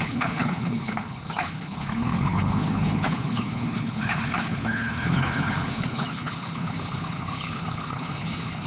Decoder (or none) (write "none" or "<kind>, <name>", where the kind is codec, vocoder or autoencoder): codec, HILCodec